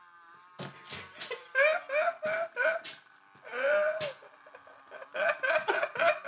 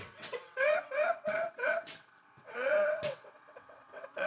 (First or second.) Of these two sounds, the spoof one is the second